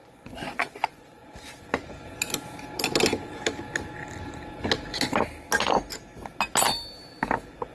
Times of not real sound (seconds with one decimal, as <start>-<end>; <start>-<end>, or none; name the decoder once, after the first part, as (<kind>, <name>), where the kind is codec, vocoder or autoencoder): 0.0-1.3 (vocoder, Vocos)